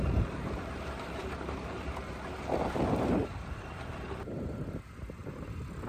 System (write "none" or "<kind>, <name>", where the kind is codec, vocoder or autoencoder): vocoder, BigVGAN v2